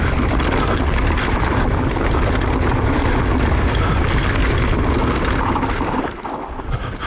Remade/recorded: recorded